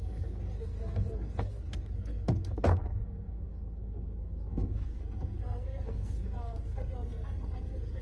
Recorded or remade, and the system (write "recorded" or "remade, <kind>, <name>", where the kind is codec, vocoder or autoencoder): remade, codec, SNAC